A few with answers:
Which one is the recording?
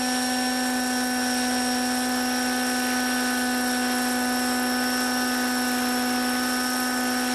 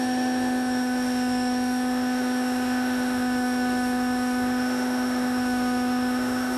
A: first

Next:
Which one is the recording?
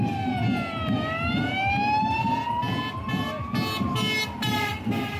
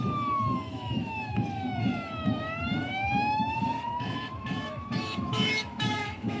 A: first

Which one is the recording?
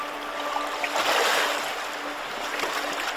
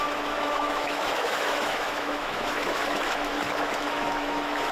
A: first